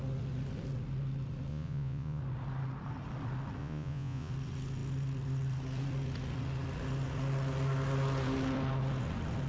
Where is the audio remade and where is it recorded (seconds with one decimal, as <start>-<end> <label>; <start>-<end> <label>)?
0.0-1.5 recorded; 1.5-2.2 remade; 2.2-3.6 recorded; 3.6-4.3 remade; 4.3-9.5 recorded